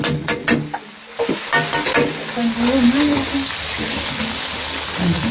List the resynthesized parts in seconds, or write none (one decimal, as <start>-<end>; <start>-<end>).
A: none